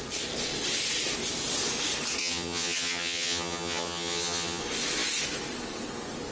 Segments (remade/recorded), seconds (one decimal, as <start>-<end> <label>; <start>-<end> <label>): 0.0-2.2 recorded; 2.2-4.6 remade; 4.6-6.3 recorded